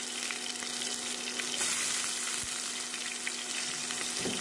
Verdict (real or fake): real